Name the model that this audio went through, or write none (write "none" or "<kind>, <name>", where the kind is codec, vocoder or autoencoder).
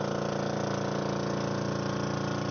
none